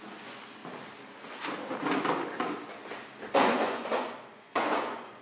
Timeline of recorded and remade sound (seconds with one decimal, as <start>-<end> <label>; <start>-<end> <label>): 0.0-0.6 remade; 0.6-3.3 recorded; 3.3-5.2 remade